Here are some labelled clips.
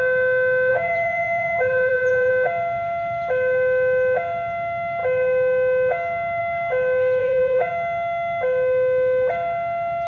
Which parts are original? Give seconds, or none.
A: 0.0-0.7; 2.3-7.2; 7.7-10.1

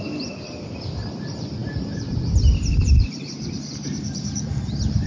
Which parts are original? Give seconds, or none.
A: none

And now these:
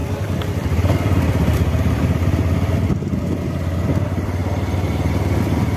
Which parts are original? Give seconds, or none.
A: 4.4-5.8

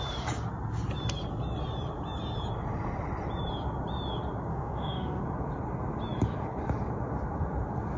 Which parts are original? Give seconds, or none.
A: 0.0-4.5; 5.2-8.0

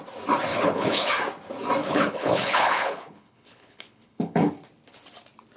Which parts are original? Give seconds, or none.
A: 0.0-0.5; 1.1-1.8; 4.5-5.6